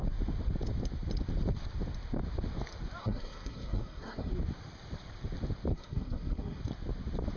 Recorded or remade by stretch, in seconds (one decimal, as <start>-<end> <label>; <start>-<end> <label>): 0.0-3.0 recorded; 3.0-4.3 remade; 4.3-5.7 recorded; 5.7-6.6 remade; 6.6-7.4 recorded